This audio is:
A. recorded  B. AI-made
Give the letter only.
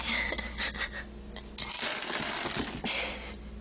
A